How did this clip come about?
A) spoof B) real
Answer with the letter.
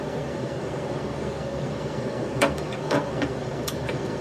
A